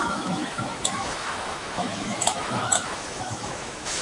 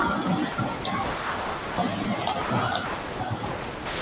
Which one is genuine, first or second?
second